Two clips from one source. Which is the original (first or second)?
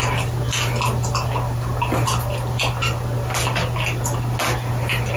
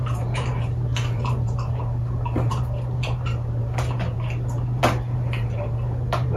first